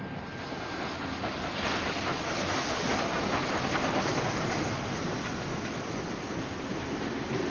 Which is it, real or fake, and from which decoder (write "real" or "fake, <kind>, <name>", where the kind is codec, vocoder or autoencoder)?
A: real